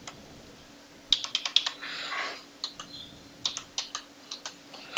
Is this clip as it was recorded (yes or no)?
yes